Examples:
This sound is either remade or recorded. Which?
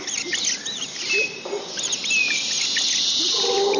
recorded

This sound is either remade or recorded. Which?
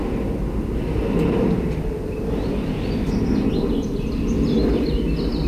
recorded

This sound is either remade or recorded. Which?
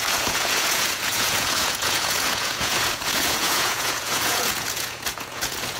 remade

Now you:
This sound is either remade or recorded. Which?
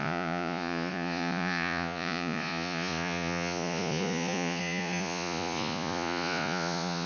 remade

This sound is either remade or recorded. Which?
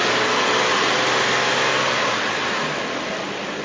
recorded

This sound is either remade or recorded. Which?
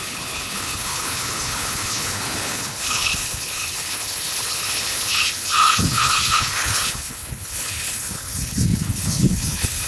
remade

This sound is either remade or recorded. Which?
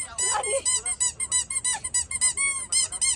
recorded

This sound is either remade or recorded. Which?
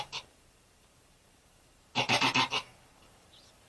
remade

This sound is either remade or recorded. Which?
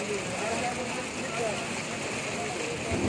recorded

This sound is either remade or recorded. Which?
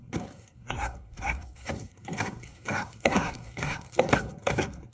remade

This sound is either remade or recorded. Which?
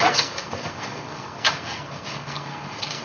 remade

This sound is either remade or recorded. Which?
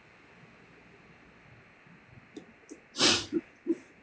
recorded